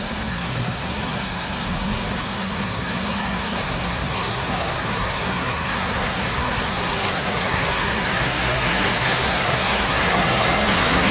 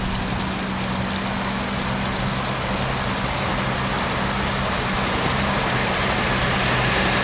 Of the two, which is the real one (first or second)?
second